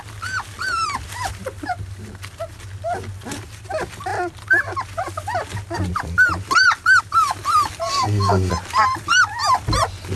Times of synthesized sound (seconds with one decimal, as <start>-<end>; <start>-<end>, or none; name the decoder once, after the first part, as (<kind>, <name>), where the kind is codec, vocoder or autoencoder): 7.9-8.5 (codec, SNAC)